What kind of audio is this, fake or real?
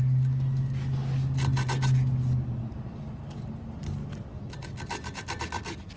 real